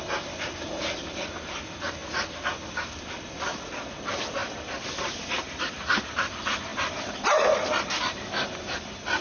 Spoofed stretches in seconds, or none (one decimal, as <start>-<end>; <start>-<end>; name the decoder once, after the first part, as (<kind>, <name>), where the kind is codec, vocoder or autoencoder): 4.4-6.1 (vocoder, BigVGAN v2); 6.7-8.0